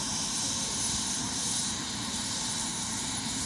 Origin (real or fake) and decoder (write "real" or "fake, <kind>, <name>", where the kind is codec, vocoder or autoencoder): fake, vocoder, BigVGAN v2